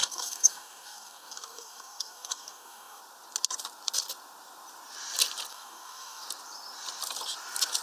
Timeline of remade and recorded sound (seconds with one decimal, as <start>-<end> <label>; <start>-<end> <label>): 0.0-3.0 remade; 3.0-5.5 recorded; 5.5-6.2 remade; 6.2-7.8 recorded